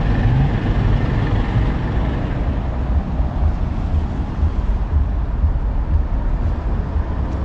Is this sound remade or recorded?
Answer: recorded